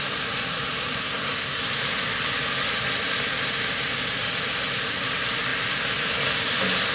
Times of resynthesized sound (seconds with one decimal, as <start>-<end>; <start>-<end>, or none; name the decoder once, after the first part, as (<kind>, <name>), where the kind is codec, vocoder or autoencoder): 1.0-1.6 (codec, SNAC)